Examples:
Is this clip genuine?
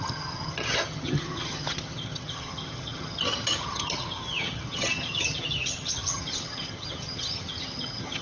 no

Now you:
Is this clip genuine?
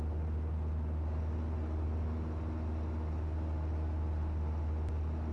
yes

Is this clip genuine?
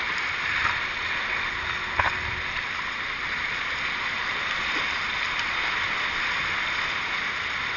yes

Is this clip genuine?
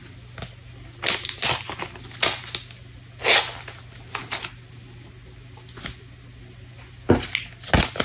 yes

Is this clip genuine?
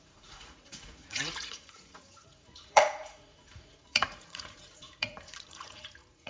no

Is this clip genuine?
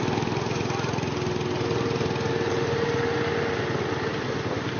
yes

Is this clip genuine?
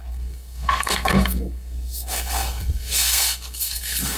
no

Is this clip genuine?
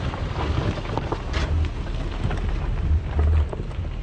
no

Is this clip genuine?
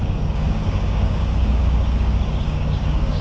no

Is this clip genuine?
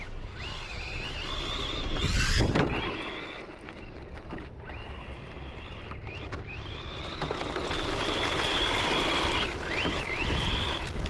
yes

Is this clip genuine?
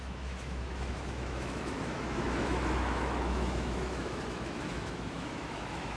no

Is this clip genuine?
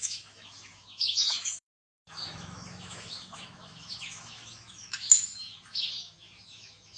no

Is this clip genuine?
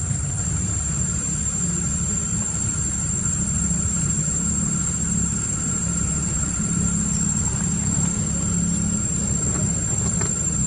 no